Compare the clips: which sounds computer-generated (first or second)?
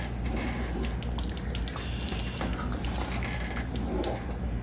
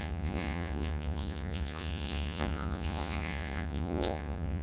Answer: second